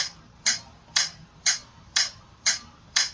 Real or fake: fake